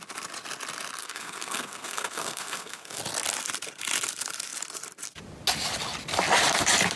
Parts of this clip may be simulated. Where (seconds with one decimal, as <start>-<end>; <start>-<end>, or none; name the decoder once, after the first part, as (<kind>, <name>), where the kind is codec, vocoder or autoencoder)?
1.0-3.0 (codec, SNAC)